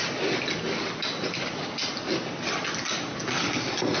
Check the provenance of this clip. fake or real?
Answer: real